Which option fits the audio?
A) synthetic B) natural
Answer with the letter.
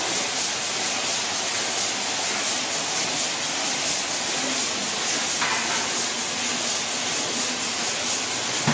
B